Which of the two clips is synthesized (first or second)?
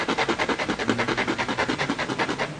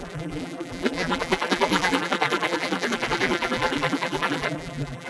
second